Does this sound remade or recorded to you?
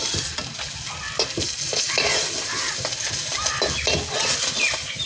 recorded